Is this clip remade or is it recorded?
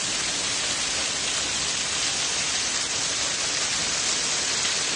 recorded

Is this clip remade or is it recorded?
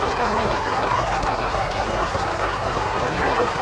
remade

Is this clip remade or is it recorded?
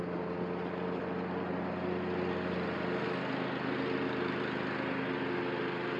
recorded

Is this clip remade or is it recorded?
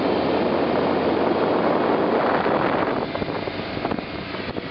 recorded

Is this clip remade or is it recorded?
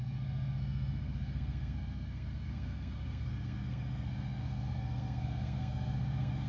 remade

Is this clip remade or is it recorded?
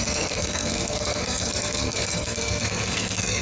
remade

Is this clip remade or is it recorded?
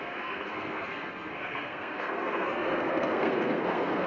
remade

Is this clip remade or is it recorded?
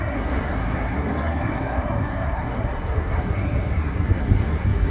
remade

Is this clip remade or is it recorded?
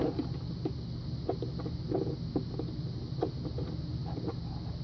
recorded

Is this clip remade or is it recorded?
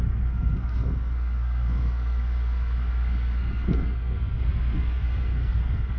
remade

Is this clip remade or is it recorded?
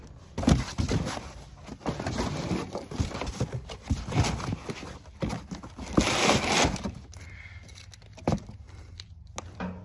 recorded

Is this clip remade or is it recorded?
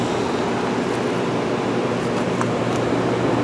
recorded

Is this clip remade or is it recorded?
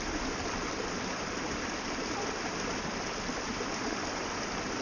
recorded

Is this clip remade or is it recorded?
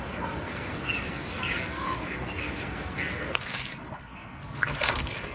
remade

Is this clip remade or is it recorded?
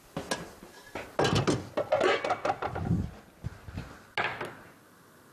recorded